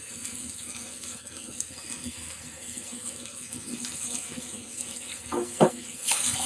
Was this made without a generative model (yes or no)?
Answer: no